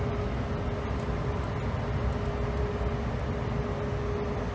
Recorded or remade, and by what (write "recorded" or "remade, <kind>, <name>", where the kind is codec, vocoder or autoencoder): recorded